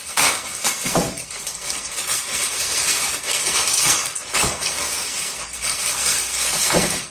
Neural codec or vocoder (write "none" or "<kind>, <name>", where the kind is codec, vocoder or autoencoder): codec, SNAC